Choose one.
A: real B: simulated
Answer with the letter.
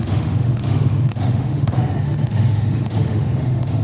B